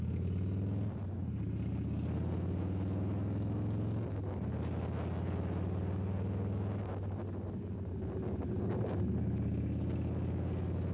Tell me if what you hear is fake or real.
real